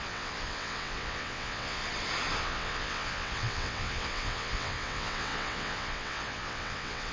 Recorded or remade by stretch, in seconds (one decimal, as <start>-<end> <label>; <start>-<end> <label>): 0.0-1.8 remade; 1.8-2.4 recorded; 2.4-7.1 remade